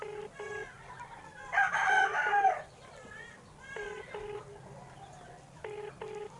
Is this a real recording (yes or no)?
yes